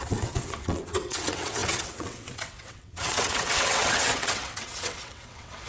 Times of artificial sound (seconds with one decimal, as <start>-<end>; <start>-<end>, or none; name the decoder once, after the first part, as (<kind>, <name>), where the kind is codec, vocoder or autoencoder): 0.0-5.7 (vocoder, WaveNeXt)